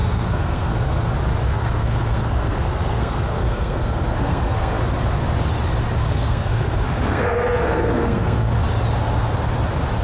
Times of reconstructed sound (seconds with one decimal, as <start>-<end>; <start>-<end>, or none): 0.0-1.1; 1.5-4.8; 6.0-8.5

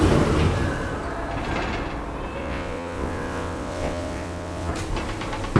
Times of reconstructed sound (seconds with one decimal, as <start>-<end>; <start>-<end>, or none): 2.4-4.7

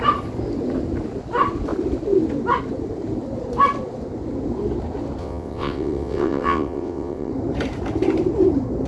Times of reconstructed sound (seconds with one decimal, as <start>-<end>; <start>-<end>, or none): 5.2-7.3

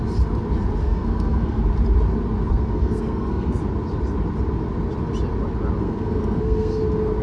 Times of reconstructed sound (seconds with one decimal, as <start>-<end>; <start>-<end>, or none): 0.8-1.6; 2.5-3.6; 5.8-6.8

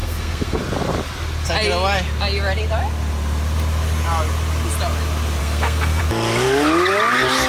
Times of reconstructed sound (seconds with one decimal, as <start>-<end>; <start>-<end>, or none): 0.0-0.6; 5.4-6.0

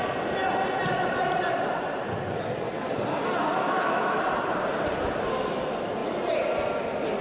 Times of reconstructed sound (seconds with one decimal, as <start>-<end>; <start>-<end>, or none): 3.6-4.2